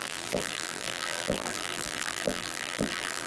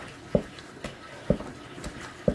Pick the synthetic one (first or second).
first